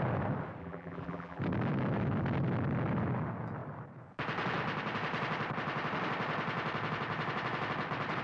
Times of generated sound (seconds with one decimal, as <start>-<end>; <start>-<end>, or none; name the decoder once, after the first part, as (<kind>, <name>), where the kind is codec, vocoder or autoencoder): 0.6-1.4 (vocoder, BigVGAN v2)